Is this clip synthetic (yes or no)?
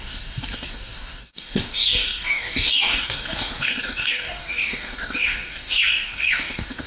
yes